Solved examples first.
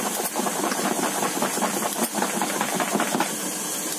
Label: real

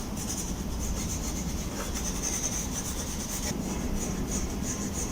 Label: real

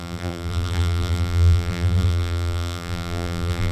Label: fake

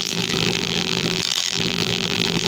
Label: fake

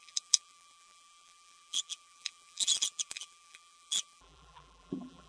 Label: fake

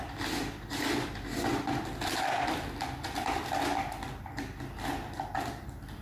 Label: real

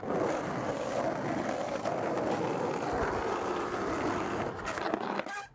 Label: real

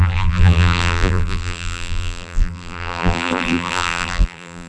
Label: fake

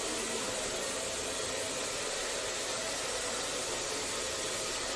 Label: real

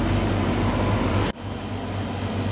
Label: real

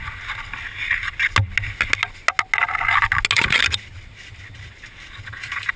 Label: real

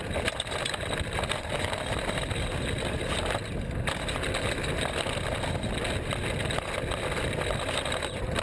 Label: real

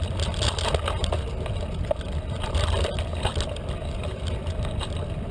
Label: real